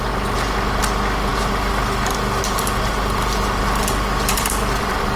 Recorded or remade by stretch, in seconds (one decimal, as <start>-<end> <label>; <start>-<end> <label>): 0.0-4.3 recorded; 4.3-5.2 remade